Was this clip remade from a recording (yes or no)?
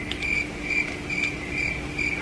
no